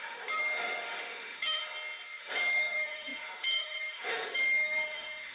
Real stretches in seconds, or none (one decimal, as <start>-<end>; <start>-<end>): 1.6-2.2